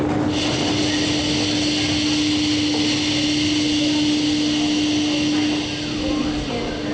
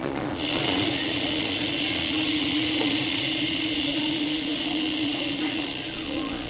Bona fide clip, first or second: first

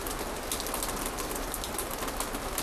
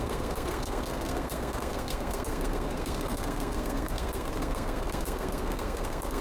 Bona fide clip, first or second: first